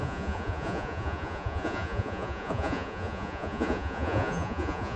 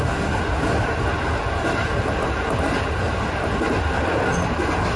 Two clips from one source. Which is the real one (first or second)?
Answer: second